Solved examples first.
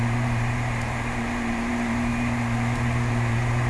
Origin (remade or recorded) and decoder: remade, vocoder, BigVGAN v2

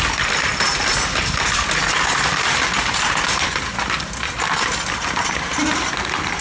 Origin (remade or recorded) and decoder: recorded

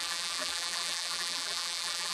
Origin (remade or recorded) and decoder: remade, vocoder, BigVGAN v2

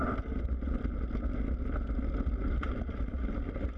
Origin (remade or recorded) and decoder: recorded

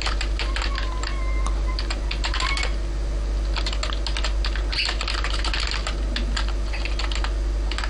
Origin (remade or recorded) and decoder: recorded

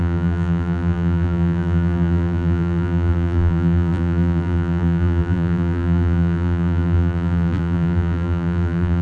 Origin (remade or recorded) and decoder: remade, vocoder, BigVGAN v2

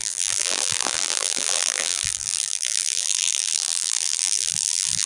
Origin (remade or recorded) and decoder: remade, vocoder, BigVGAN v2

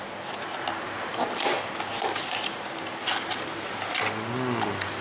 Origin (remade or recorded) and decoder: recorded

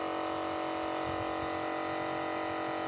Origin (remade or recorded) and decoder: recorded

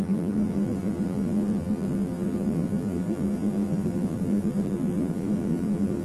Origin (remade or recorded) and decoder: remade, vocoder, BigVGAN v2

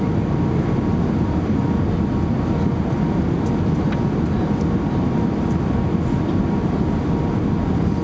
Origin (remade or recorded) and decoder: recorded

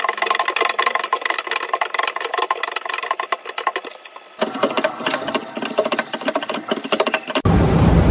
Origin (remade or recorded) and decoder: remade, vocoder, BigVGAN v2